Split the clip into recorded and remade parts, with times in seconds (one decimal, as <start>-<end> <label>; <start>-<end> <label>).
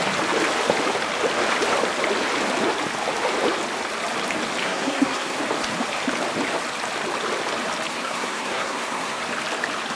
0.0-4.6 recorded; 4.6-5.4 remade; 5.4-7.9 recorded; 7.9-9.2 remade; 9.2-9.9 recorded